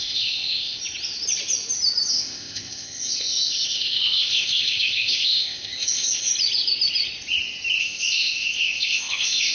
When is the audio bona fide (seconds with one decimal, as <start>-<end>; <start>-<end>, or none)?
0.8-2.1; 6.3-7.8